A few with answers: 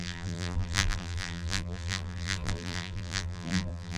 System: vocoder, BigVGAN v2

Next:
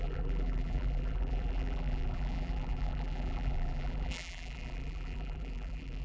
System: vocoder, BigVGAN v2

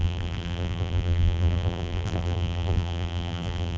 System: vocoder, BigVGAN v2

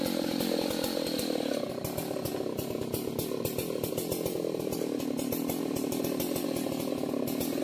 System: none